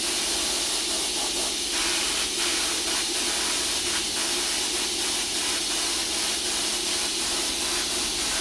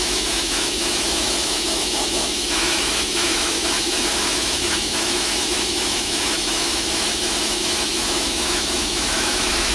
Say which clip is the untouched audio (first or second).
first